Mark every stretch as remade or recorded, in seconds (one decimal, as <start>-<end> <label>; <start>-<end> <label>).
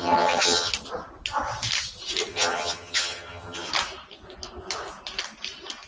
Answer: 0.0-0.7 remade; 0.7-2.3 recorded; 2.3-3.7 remade; 3.7-5.9 recorded